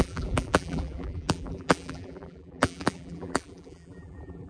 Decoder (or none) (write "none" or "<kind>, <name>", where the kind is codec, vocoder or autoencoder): vocoder, BigVGAN v2